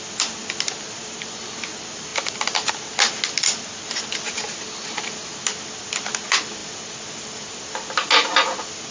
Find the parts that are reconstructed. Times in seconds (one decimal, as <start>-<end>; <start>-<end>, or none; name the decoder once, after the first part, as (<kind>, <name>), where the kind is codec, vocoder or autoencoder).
none